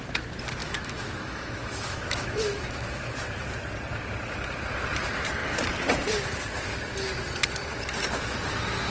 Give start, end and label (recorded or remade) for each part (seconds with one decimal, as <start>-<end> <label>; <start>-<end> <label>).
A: 0.0-0.6 recorded; 0.6-3.4 remade; 3.4-8.9 recorded